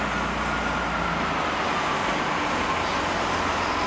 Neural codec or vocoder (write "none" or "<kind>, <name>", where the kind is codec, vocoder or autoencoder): none